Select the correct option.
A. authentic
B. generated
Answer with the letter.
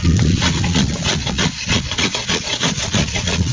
B